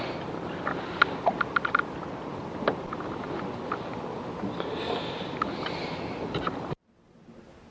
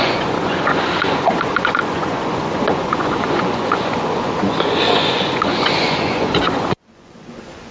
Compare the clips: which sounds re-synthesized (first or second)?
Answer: second